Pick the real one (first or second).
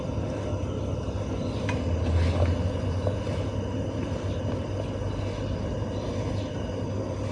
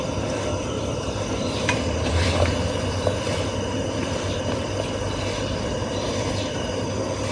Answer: first